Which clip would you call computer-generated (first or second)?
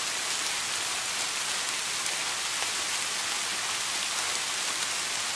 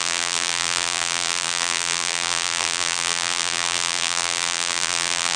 second